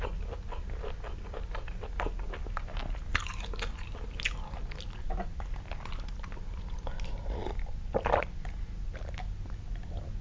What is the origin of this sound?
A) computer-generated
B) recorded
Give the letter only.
B